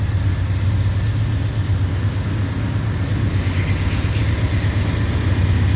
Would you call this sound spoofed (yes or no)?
no